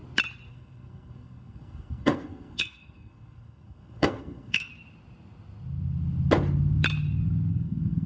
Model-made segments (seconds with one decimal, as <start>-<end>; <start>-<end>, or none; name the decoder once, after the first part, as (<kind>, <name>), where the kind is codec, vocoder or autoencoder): 0.5-4.7 (codec, SNAC); 7.5-8.1